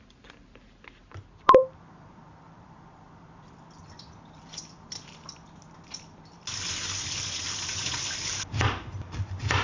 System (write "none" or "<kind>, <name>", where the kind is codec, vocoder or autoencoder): vocoder, BigVGAN v2